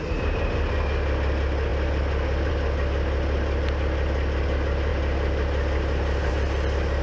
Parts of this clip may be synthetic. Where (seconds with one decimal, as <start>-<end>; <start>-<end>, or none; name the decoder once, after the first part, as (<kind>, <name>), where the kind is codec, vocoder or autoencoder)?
none